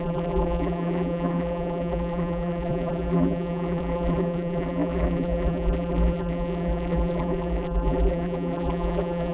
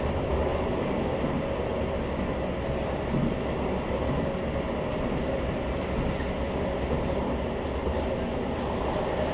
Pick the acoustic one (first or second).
second